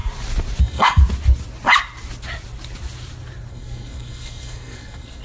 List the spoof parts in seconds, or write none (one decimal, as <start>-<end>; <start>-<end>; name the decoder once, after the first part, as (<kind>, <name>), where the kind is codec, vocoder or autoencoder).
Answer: 0.6-1.0 (codec, SNAC); 3.5-5.2